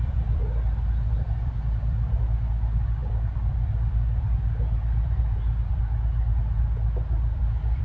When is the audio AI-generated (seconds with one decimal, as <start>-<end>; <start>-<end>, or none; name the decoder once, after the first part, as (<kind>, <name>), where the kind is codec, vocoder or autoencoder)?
0.0-0.4 (vocoder, BigVGAN v2); 1.1-7.8